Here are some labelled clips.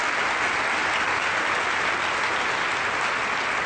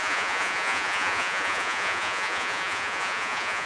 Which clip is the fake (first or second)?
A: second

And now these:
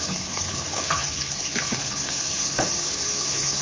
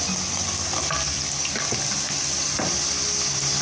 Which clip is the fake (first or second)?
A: first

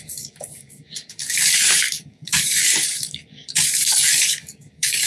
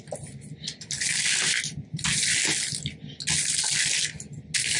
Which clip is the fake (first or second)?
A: first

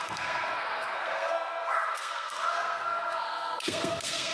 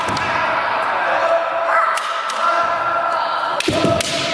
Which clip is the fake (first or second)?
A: first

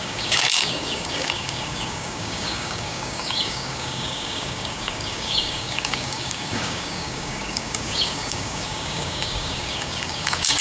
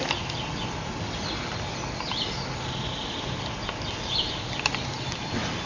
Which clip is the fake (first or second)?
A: first